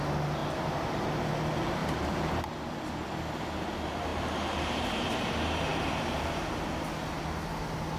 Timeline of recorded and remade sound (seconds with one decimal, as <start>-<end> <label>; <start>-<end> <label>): 0.0-1.8 recorded; 1.8-2.5 remade; 2.5-4.1 recorded; 4.1-5.2 remade; 5.2-5.7 recorded; 5.7-6.4 remade; 6.4-8.0 recorded